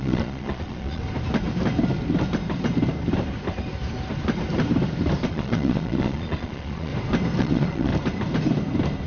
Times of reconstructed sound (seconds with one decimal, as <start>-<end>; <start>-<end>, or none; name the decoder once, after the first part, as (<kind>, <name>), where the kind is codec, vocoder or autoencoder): 0.0-1.0 (vocoder, Vocos); 5.3-6.9; 7.4-7.9